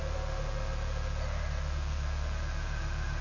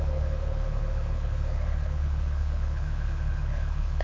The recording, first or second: first